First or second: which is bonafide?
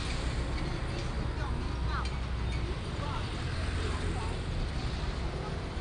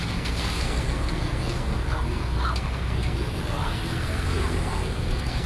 first